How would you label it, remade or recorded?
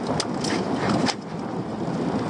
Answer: recorded